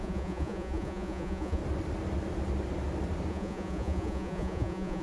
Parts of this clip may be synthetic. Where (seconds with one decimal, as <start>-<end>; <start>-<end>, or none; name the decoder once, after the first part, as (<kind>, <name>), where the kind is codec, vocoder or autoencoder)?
0.0-1.6 (vocoder, Vocos); 3.3-5.0